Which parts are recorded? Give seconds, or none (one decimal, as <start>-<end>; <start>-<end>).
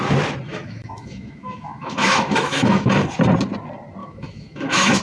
0.0-0.5; 2.9-4.0